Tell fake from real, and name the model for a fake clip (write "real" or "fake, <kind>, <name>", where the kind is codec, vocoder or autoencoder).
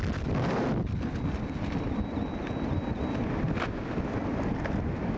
real